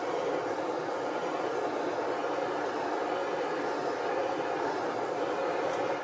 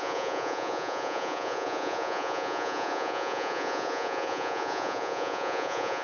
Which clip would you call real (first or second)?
first